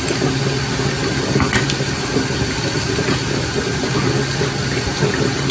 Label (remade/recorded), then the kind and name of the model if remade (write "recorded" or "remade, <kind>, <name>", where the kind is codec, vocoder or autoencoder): recorded